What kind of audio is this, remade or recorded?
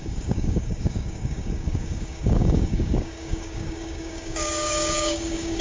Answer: remade